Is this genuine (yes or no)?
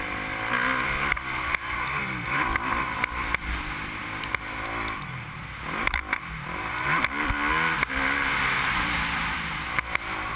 yes